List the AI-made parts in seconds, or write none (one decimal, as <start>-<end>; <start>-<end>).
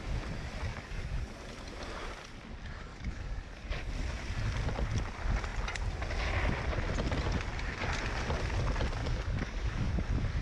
0.7-1.2; 2.9-3.9; 9.0-9.9